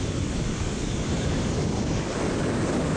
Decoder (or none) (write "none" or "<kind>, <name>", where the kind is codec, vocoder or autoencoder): codec, DAC